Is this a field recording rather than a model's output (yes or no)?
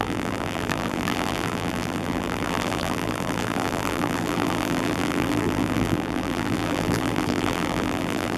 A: no